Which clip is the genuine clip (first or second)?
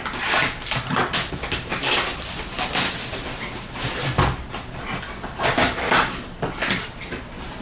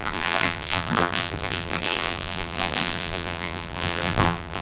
first